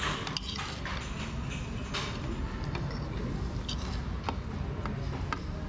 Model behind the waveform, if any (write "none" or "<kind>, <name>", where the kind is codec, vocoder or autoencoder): none